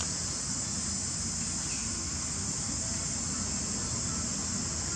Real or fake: real